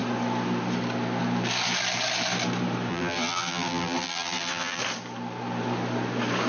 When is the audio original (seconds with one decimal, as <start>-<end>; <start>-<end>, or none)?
0.0-2.9; 4.8-6.5